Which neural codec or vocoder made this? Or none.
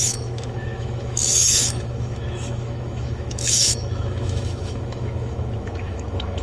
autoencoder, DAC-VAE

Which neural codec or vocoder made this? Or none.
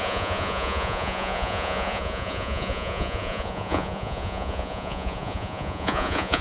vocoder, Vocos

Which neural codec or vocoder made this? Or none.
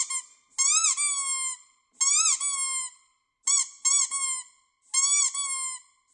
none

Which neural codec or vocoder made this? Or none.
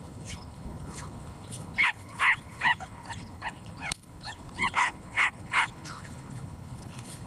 codec, HILCodec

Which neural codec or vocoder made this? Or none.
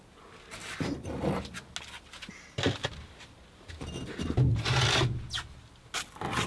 none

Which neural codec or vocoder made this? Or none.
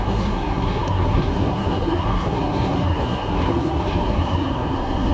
codec, SNAC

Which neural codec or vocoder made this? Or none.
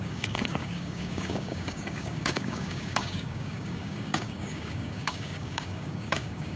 codec, DAC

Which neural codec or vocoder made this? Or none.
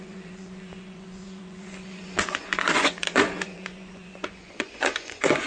vocoder, Vocos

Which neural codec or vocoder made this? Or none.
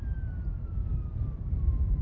vocoder, BigVGAN v2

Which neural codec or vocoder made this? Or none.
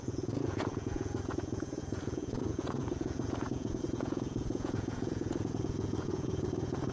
vocoder, Vocos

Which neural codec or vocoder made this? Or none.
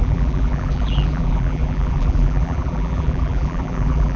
vocoder, BigVGAN v2